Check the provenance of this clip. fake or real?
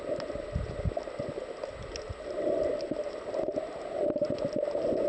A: real